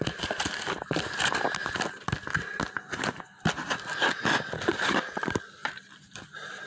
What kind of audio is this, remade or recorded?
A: recorded